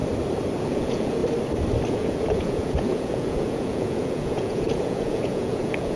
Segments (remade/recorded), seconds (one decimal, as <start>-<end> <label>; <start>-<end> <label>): 0.0-0.6 recorded; 0.6-1.2 remade; 1.2-1.9 recorded; 1.9-6.0 remade